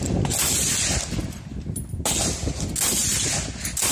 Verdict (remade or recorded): recorded